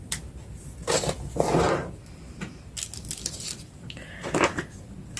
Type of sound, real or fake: real